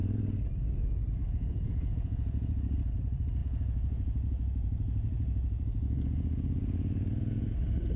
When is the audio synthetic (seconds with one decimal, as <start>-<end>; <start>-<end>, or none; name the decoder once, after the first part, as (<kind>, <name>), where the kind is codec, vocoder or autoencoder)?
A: 1.2-2.6 (vocoder, Vocos); 3.4-7.4